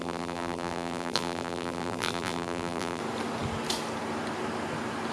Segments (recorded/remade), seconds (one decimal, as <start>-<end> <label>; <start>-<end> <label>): 0.0-3.0 remade; 3.0-5.1 recorded